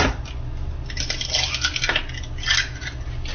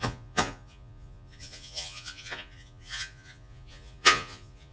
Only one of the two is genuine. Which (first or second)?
first